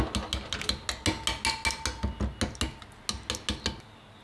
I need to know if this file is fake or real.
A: real